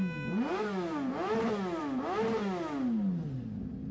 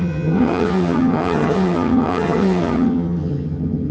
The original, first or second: first